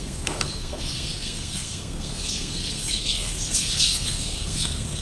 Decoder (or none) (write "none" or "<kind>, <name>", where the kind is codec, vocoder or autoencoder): codec, SNAC